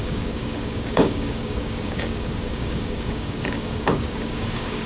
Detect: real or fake fake